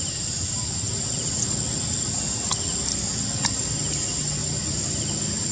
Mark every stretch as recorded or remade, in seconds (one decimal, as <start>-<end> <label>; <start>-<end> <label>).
0.0-4.4 recorded; 4.4-5.5 remade